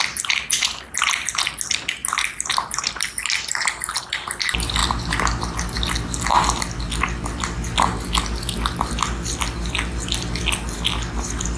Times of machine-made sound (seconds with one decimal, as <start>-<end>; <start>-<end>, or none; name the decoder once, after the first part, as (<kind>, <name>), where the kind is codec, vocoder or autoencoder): none